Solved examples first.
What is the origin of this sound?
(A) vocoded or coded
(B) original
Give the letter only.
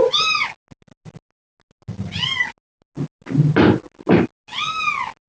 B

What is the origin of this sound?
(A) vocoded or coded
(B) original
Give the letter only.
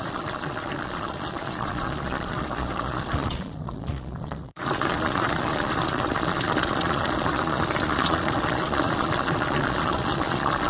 A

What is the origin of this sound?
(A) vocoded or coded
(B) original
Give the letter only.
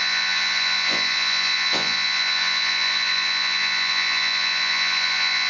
A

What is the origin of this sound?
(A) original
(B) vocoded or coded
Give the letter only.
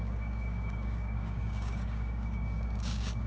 B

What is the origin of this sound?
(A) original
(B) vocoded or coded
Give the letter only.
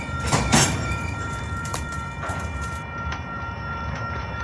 B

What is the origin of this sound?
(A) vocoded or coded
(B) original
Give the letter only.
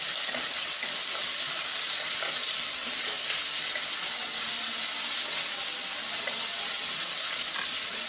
B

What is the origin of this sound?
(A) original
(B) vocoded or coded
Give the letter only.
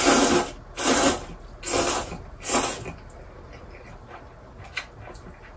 A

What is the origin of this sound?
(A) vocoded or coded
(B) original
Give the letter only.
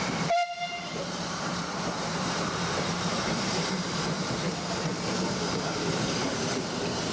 A